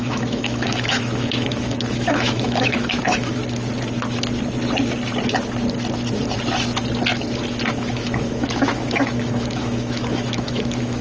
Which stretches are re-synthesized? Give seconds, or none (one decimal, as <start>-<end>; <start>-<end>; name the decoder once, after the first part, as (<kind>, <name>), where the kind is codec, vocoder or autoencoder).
0.0-3.4 (autoencoder, DAC-VAE); 7.7-11.0